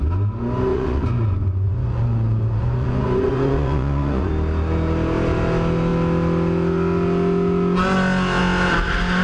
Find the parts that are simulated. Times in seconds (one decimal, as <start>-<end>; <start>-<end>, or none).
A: 0.7-4.3